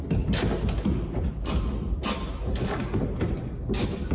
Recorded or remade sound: recorded